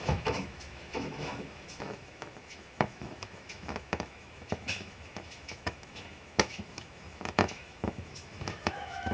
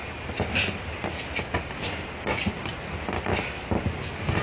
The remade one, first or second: first